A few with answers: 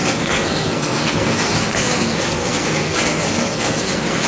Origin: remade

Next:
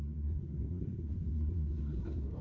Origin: remade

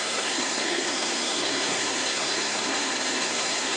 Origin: remade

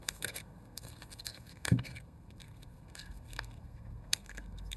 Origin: remade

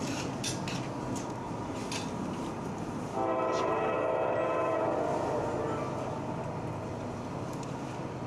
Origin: recorded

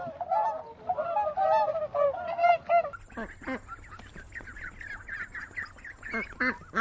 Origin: recorded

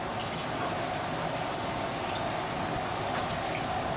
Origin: recorded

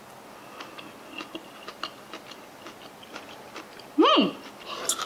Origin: recorded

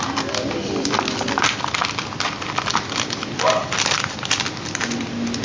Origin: recorded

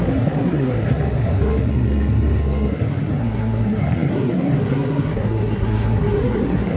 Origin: remade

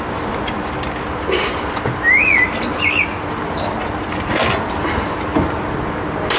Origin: recorded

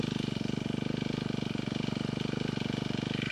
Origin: recorded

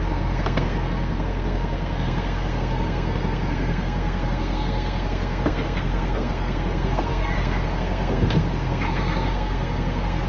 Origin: remade